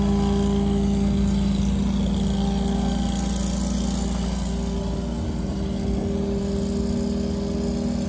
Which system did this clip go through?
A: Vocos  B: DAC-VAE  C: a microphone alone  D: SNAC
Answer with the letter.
C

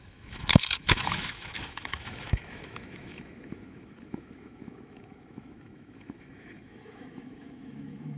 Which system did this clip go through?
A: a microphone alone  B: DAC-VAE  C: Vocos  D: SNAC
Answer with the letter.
B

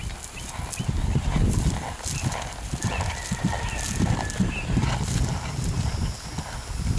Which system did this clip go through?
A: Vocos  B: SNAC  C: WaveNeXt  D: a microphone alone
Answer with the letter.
D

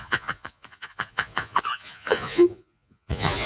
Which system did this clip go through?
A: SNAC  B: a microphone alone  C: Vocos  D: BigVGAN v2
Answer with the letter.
C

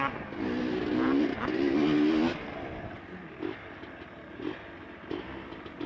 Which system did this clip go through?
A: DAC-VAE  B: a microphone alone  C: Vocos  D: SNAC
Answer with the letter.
B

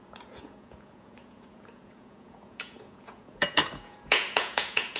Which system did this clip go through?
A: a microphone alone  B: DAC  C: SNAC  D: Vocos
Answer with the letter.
D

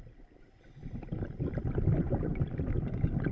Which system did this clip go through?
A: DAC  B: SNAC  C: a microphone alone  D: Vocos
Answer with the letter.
C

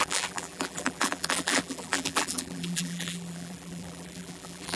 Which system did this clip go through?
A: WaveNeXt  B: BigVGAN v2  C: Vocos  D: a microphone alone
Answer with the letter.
B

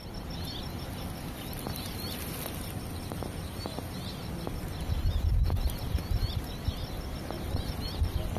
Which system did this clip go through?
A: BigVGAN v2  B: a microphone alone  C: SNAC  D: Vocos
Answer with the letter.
B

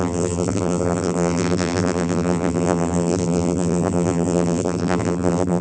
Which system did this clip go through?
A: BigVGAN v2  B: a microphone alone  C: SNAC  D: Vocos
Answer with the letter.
A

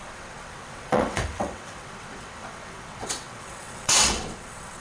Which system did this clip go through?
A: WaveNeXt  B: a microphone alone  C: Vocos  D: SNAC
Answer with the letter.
A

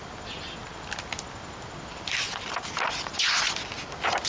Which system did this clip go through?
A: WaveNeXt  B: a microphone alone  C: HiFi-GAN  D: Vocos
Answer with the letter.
B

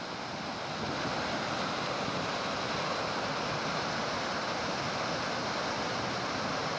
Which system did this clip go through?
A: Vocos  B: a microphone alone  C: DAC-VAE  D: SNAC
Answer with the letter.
B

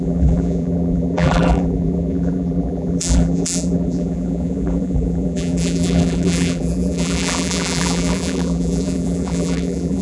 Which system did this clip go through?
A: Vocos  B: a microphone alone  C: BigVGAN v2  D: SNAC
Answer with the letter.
C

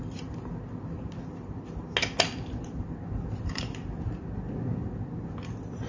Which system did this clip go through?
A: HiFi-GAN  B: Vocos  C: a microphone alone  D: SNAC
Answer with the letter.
C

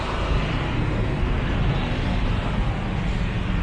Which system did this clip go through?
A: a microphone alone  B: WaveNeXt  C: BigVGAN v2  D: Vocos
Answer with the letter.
A